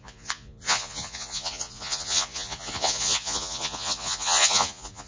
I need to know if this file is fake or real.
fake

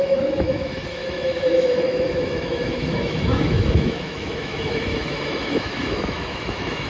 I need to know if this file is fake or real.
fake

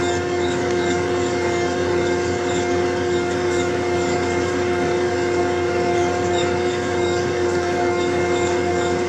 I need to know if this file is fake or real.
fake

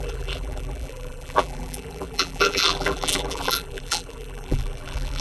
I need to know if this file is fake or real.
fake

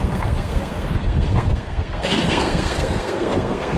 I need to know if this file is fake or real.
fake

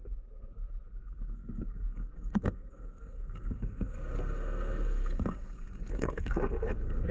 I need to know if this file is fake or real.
fake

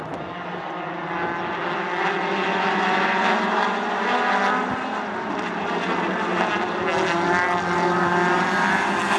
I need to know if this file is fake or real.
real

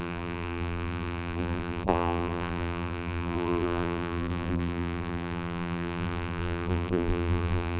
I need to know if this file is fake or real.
fake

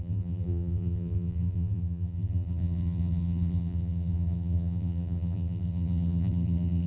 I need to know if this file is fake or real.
fake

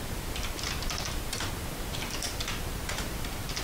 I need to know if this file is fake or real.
fake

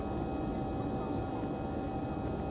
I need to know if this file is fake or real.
real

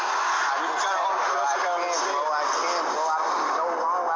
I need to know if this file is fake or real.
real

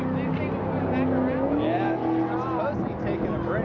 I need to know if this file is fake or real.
real